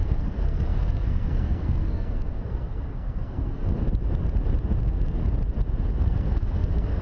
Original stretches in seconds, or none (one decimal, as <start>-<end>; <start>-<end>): 3.6-4.8; 5.2-6.0